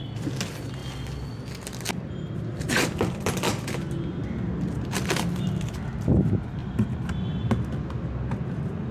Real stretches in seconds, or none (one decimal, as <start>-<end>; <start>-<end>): 0.0-8.9